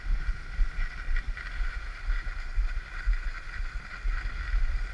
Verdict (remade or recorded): recorded